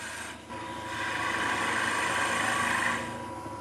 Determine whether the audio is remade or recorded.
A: recorded